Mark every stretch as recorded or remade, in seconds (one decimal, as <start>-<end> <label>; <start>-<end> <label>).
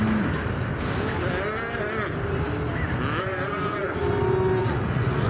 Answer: 0.0-3.2 recorded; 3.2-4.0 remade; 4.0-4.6 recorded; 4.6-5.3 remade